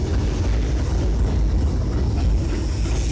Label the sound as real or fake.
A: real